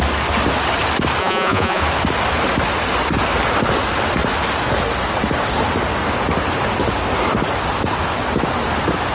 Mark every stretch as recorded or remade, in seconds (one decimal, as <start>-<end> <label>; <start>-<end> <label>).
0.0-1.2 recorded; 1.2-1.8 remade; 1.8-9.1 recorded